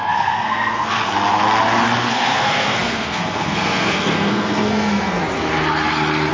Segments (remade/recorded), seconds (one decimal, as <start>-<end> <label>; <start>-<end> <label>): 0.0-1.0 remade; 1.0-2.1 recorded; 2.1-5.2 remade; 5.2-6.3 recorded